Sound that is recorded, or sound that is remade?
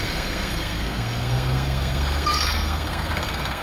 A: remade